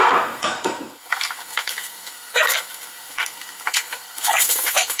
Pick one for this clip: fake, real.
fake